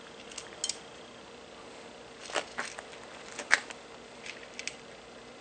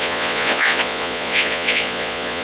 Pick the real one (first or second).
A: first